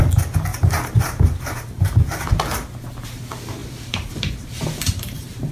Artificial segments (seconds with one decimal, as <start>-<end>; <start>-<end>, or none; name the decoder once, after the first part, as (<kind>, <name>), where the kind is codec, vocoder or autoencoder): 0.5-3.2 (vocoder, BigVGAN v2); 3.6-5.5